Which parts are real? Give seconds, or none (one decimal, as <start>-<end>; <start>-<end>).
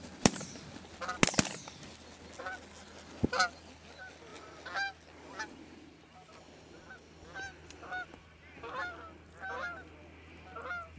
0.0-11.0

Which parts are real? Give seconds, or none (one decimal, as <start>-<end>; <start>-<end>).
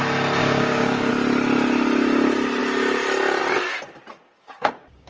0.0-0.4; 1.1-4.2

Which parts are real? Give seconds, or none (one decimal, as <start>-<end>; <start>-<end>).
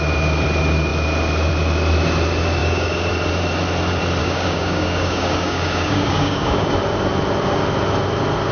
0.0-2.6; 3.1-4.2; 6.7-8.5